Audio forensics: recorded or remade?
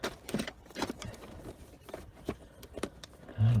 remade